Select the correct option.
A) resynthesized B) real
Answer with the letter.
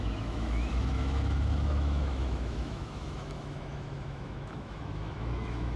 A